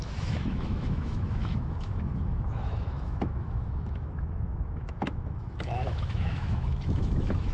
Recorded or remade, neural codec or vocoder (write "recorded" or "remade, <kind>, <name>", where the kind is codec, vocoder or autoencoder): remade, autoencoder, DAC-VAE